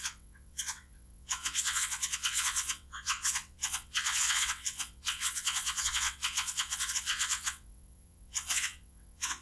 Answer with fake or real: fake